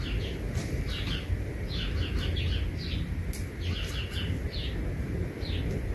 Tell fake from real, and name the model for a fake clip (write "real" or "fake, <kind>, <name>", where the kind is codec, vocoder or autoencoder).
real